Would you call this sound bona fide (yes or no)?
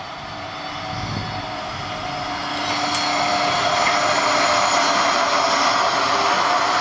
yes